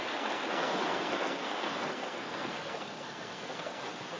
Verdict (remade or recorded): remade